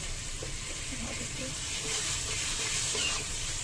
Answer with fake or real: fake